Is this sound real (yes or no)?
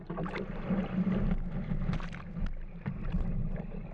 yes